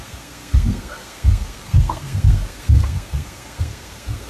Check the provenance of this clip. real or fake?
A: fake